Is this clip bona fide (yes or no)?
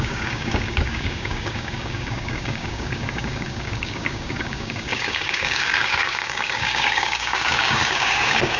no